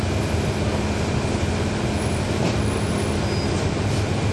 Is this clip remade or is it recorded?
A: recorded